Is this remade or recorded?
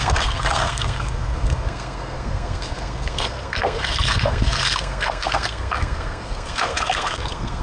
remade